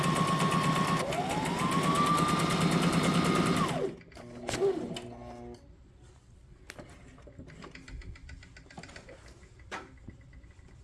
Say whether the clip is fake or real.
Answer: real